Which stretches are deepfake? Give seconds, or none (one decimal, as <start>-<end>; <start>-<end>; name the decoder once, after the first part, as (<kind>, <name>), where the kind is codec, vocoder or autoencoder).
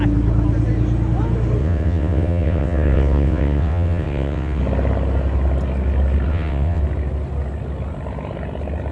1.6-4.6 (vocoder, WaveNeXt); 6.3-6.8